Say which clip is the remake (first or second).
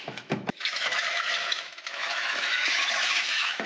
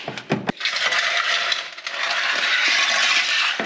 first